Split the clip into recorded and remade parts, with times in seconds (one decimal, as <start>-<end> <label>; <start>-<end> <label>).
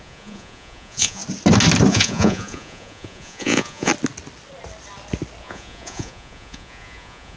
0.0-1.2 remade; 1.2-1.9 recorded; 1.9-3.9 remade; 3.9-5.4 recorded; 5.4-7.4 remade